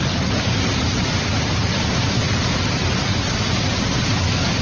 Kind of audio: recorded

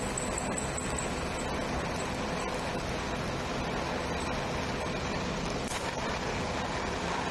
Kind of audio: recorded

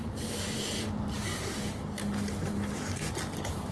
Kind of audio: recorded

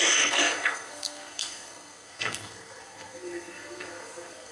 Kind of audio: remade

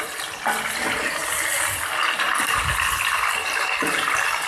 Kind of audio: recorded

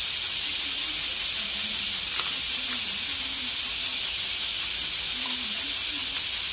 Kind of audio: recorded